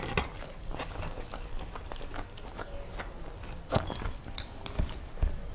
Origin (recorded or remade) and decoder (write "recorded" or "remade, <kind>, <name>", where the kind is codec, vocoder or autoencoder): recorded